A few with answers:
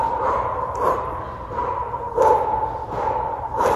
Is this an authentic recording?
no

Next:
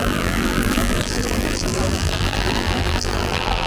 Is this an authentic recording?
no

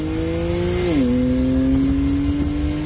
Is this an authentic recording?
yes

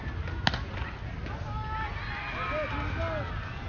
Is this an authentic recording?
yes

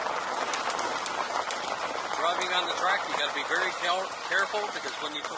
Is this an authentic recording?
yes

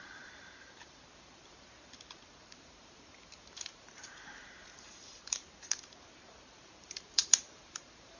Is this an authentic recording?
no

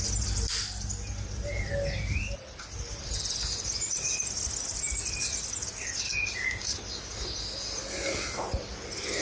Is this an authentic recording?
yes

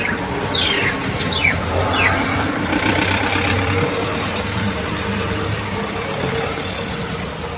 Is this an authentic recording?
no